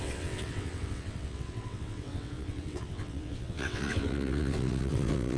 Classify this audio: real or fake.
fake